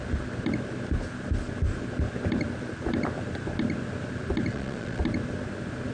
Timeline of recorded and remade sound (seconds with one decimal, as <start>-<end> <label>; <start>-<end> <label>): 0.0-4.5 recorded; 4.5-5.0 remade; 5.0-5.9 recorded